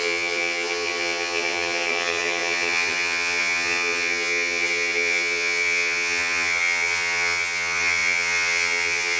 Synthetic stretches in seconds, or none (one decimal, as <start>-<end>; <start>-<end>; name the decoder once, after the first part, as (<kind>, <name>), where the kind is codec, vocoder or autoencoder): 0.0-9.2 (vocoder, HiFi-GAN)